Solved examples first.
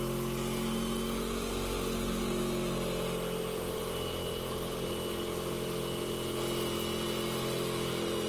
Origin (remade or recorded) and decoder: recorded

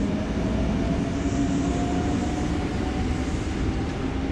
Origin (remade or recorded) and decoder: recorded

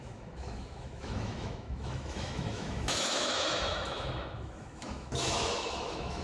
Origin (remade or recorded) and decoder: remade, autoencoder, DAC-VAE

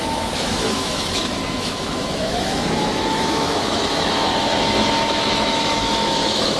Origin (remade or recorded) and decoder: remade, autoencoder, DAC-VAE